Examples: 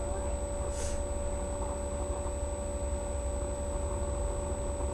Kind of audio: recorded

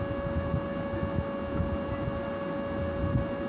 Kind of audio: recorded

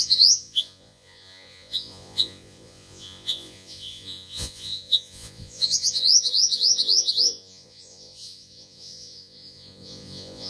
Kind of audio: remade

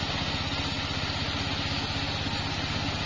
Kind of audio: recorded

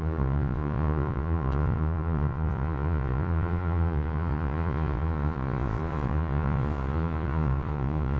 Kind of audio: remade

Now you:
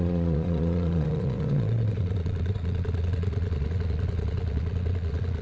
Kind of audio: remade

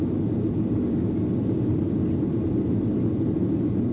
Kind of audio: recorded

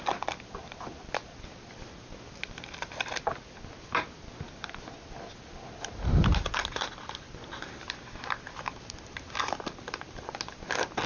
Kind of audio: recorded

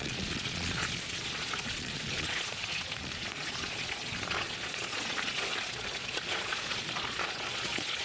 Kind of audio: remade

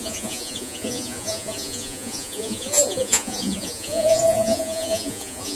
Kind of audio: remade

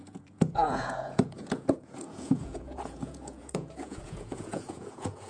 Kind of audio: remade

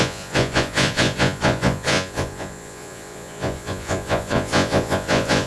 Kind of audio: remade